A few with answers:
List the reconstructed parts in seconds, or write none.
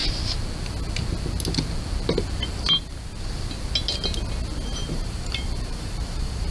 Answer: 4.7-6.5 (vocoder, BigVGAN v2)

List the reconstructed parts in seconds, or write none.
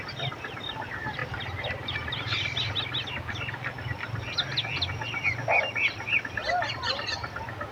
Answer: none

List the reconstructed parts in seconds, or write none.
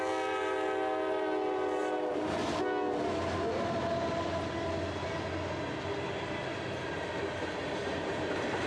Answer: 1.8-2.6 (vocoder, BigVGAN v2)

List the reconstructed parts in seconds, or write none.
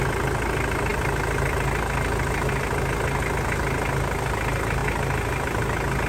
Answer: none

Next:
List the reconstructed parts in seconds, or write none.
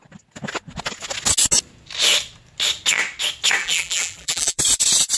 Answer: 3.6-4.6 (vocoder, BigVGAN v2)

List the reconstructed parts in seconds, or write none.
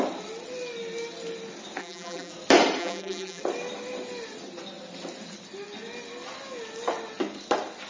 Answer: 1.8-2.3 (vocoder, BigVGAN v2); 2.8-3.4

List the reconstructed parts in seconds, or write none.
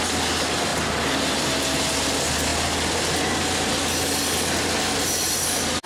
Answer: none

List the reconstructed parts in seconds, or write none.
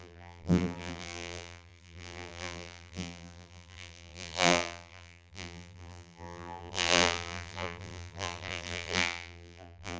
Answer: 0.0-10.0 (vocoder, BigVGAN v2)